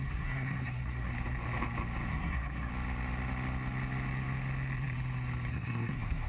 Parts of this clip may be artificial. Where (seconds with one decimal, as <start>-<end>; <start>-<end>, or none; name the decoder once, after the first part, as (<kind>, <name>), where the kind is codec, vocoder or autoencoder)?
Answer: 0.0-1.1 (codec, SNAC); 2.1-2.7; 5.5-6.3